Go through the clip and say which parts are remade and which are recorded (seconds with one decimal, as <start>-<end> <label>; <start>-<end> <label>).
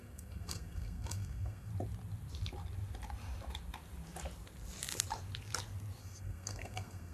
0.0-1.7 remade; 1.7-6.0 recorded; 6.0-7.1 remade